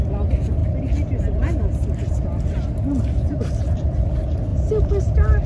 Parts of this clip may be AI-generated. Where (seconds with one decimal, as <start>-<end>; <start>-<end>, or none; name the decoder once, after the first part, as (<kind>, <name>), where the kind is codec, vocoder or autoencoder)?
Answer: none